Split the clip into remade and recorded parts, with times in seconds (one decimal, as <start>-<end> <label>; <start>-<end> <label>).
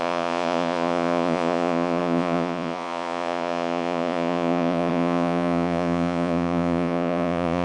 0.0-7.6 remade